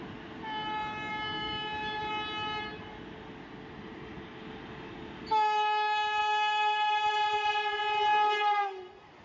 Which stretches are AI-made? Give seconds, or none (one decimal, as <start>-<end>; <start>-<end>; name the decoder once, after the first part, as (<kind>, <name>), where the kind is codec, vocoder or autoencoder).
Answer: 1.1-2.1 (codec, DAC)

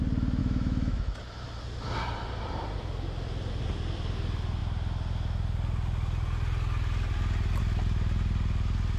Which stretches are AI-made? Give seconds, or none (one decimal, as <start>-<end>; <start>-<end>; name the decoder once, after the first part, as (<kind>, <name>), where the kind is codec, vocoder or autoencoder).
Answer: 0.4-1.2 (autoencoder, DAC-VAE)

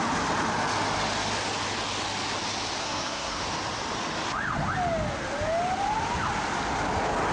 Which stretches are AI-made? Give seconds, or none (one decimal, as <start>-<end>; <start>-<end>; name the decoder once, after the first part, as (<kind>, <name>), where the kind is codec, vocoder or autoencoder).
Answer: 2.8-3.4 (codec, SNAC)